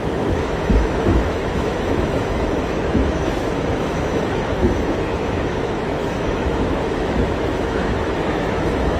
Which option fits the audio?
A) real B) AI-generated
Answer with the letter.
B